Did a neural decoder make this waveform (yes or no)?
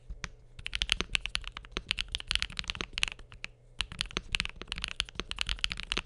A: no